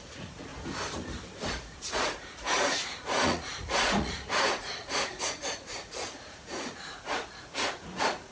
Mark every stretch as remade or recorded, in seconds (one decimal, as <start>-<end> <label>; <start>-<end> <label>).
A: 0.0-0.5 remade; 0.5-1.5 recorded; 1.5-8.3 remade